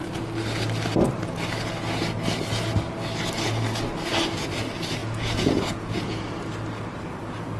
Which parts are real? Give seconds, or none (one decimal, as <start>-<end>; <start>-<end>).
0.0-5.0; 6.3-7.6